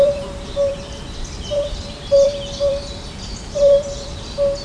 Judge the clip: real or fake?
fake